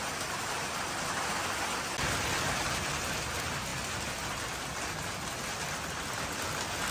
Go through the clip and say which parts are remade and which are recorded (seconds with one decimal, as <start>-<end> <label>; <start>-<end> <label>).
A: 0.0-1.4 remade; 1.4-2.1 recorded; 2.1-3.7 remade; 3.7-5.3 recorded; 5.3-6.9 remade

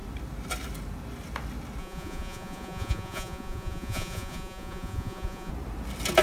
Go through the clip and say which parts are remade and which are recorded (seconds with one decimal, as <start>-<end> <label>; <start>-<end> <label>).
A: 0.0-1.8 recorded; 1.8-5.5 remade; 5.5-6.2 recorded

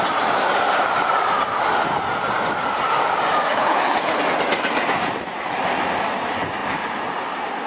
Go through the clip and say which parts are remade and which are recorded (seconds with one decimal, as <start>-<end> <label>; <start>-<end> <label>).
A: 0.0-3.5 recorded; 3.5-4.2 remade; 4.2-7.7 recorded

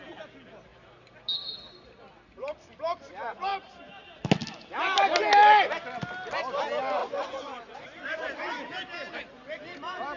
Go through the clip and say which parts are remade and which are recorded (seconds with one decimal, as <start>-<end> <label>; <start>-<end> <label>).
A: 0.0-7.0 recorded; 7.0-8.5 remade; 8.5-10.2 recorded

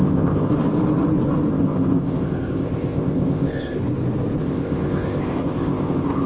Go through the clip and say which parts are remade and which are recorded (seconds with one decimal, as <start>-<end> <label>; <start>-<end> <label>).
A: 0.0-0.5 remade; 0.5-1.5 recorded; 1.5-3.8 remade; 3.8-4.4 recorded; 4.4-6.3 remade